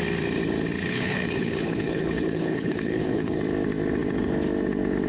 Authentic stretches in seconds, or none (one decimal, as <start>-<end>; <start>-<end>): 0.0-0.8; 3.4-5.1